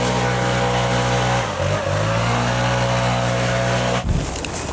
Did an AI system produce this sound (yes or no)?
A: no